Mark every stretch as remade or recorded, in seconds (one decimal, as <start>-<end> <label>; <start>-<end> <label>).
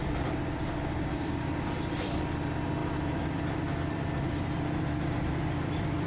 0.0-1.5 remade; 1.5-2.8 recorded; 2.8-6.1 remade